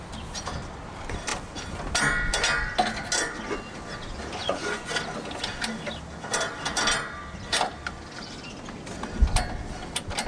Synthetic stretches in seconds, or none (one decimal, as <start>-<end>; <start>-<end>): 4.4-4.9